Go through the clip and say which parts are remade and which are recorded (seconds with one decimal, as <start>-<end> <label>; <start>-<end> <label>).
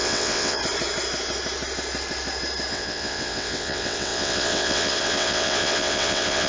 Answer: 0.0-0.6 remade; 0.6-2.7 recorded; 2.7-6.5 remade